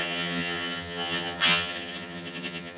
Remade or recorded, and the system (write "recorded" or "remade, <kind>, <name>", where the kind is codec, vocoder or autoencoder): remade, vocoder, HiFi-GAN